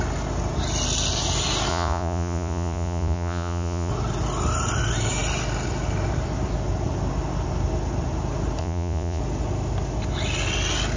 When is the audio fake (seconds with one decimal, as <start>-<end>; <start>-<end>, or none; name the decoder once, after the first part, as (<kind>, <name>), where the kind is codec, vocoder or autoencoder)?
1.7-3.9 (vocoder, Vocos); 8.6-9.2